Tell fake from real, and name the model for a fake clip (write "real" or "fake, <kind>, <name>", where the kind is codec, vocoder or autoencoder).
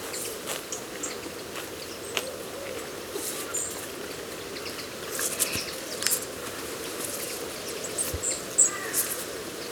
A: real